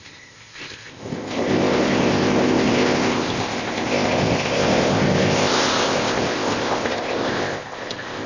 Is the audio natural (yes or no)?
no